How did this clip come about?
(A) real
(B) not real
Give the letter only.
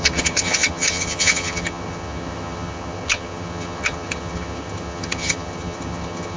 B